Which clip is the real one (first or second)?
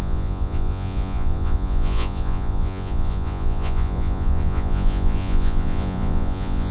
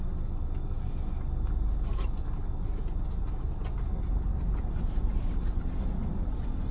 second